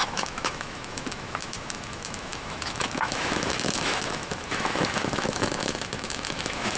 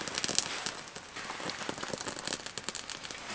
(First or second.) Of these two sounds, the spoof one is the first